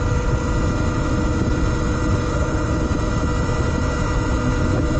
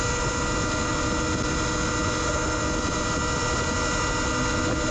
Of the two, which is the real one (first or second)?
second